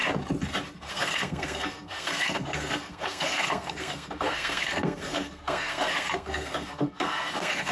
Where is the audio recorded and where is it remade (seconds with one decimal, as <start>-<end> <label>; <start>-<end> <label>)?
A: 0.0-0.9 recorded; 0.9-7.7 remade